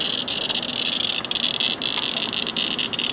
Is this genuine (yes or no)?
yes